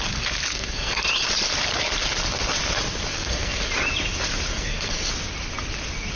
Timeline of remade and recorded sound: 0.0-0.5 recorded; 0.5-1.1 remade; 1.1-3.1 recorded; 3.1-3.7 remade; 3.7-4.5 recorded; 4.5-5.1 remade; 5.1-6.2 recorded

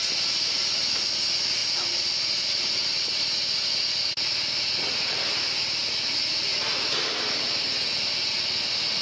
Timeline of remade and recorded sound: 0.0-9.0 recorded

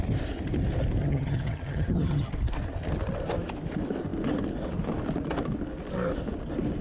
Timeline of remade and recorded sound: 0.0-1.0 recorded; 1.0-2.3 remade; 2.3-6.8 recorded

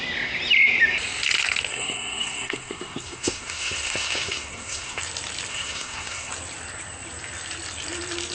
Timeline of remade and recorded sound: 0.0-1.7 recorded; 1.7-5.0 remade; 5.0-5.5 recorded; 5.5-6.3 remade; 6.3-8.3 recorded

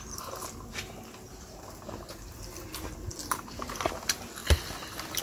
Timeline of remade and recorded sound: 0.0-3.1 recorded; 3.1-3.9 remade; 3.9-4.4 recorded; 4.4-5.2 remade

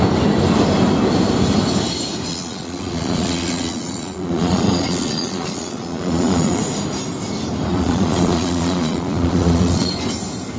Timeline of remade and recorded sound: 0.0-2.3 recorded; 2.3-6.6 remade; 6.6-7.7 recorded; 7.7-9.9 remade; 9.9-10.6 recorded